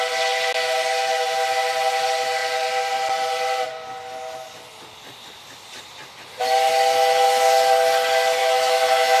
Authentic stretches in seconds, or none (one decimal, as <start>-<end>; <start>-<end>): 0.0-8.4